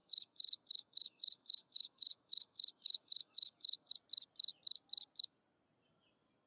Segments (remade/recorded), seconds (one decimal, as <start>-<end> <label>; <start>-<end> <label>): 0.0-3.9 remade; 3.9-6.5 recorded

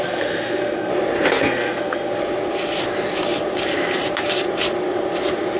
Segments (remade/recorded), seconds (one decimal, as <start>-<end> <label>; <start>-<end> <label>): 0.0-0.9 remade; 0.9-1.4 recorded; 1.4-2.1 remade; 2.1-5.6 recorded

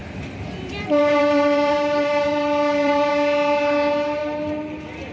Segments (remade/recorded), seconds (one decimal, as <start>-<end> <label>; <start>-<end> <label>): 0.0-3.1 remade; 3.1-5.1 recorded

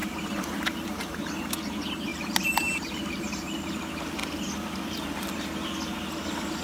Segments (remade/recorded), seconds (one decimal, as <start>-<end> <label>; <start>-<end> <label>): 0.0-1.3 remade; 1.3-2.1 recorded; 2.1-3.7 remade; 3.7-6.6 recorded

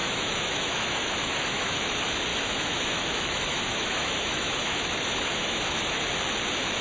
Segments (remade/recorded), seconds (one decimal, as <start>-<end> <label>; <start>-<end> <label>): 0.0-1.9 remade; 1.9-2.3 recorded; 2.3-6.0 remade; 6.0-6.8 recorded

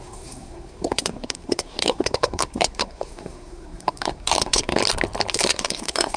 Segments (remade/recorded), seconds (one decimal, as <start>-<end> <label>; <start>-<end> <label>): 0.0-4.8 remade; 4.8-5.3 recorded; 5.3-6.2 remade